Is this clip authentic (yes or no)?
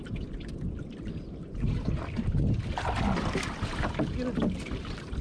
yes